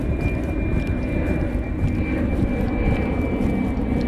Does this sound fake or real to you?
real